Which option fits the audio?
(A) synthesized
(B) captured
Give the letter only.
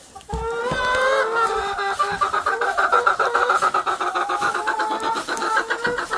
B